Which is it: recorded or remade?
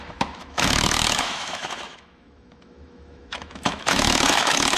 remade